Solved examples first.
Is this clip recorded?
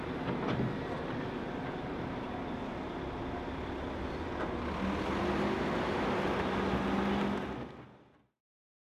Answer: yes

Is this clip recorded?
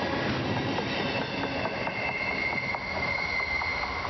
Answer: yes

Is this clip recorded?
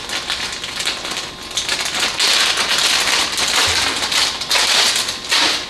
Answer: yes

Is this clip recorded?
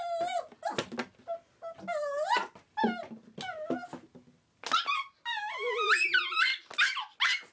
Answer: yes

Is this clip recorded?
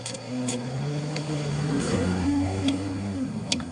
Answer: no